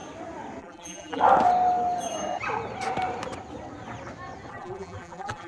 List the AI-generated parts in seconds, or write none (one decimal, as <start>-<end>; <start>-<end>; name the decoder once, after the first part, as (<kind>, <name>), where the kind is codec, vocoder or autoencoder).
0.6-1.2 (vocoder, BigVGAN v2); 4.5-5.5